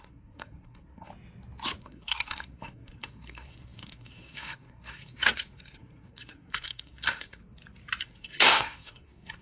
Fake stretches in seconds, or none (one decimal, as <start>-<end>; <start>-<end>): 0.0-1.1; 1.8-7.4; 8.0-9.4